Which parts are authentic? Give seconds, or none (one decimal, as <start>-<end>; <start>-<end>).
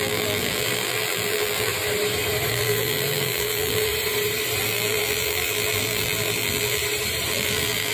1.7-2.5; 3.9-4.6; 6.8-7.3